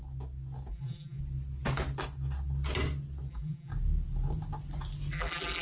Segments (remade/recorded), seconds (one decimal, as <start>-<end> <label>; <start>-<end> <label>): 0.0-0.7 recorded; 0.7-1.2 remade; 1.2-3.3 recorded; 3.3-3.7 remade; 3.7-5.1 recorded; 5.1-5.6 remade